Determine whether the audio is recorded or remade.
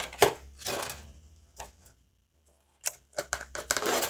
recorded